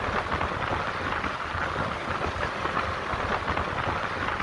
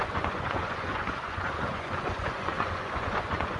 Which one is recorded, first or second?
first